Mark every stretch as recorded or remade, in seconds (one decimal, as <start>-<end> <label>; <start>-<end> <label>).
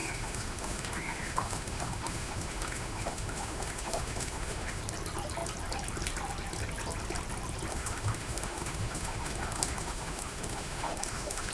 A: 0.0-4.8 remade; 4.8-7.7 recorded; 7.7-11.5 remade